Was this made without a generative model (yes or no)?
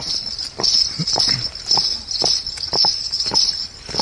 yes